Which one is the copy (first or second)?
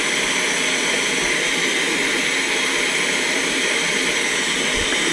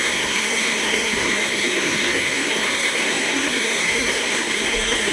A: second